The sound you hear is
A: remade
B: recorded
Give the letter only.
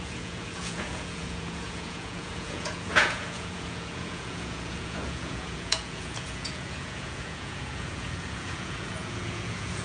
A